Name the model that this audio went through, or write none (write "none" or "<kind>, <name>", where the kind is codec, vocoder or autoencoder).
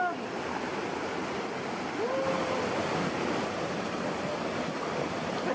none